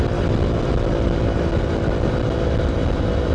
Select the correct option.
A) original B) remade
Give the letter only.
A